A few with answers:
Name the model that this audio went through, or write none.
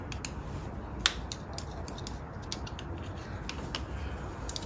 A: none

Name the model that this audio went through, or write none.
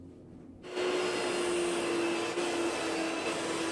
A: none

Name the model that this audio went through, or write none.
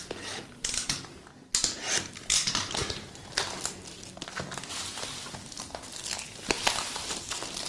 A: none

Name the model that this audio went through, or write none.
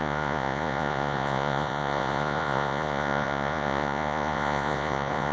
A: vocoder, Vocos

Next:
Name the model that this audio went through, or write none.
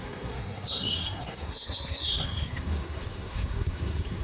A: codec, SNAC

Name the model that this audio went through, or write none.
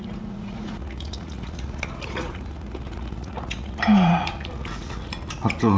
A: vocoder, Vocos